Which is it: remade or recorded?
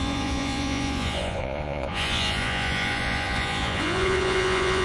remade